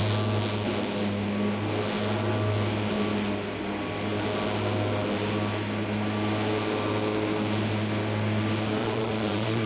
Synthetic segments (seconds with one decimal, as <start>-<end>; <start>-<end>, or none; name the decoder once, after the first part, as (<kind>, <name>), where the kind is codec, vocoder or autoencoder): 8.8-9.7 (vocoder, Vocos)